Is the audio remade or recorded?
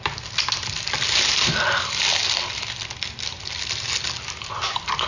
recorded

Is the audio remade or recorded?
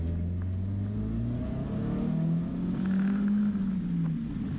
recorded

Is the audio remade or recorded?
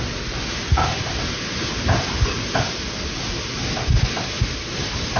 recorded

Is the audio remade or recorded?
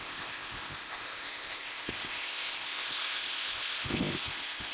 remade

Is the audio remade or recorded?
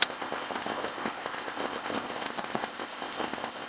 remade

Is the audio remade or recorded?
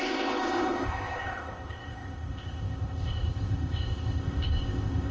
remade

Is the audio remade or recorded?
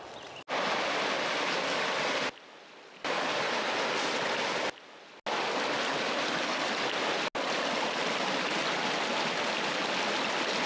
recorded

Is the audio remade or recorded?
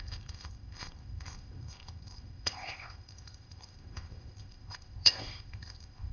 remade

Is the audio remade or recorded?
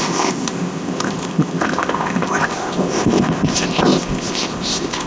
remade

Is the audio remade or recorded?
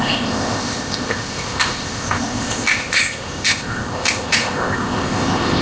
remade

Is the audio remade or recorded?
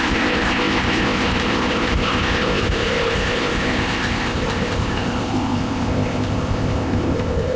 remade